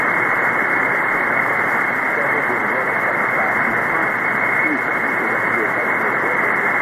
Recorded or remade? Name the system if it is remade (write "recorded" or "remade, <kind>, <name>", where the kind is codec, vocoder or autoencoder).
recorded